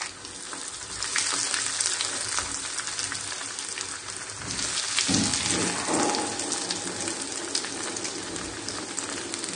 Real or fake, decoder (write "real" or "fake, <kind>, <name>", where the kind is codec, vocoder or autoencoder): real